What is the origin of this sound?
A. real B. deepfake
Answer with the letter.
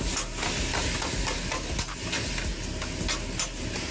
A